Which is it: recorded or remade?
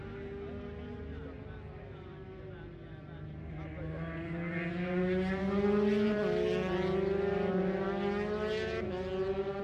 recorded